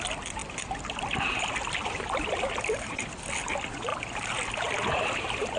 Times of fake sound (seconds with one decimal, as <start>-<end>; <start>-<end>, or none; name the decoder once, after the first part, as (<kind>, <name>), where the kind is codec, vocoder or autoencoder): none